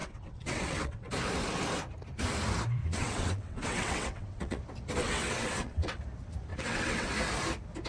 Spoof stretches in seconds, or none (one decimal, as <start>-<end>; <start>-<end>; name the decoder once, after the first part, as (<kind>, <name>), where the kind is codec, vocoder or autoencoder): 0.0-1.1 (vocoder, WaveNeXt); 2.8-4.6; 5.0-6.0; 6.5-7.1